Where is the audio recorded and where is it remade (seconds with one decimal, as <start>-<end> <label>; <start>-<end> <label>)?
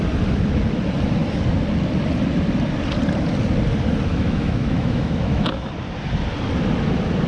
0.0-4.1 recorded; 4.1-5.7 remade; 5.7-7.3 recorded